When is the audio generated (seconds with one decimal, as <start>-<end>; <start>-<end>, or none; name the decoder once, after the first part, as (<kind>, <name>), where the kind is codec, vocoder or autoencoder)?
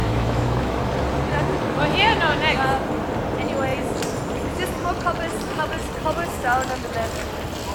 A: 0.0-0.8 (autoencoder, DAC-VAE)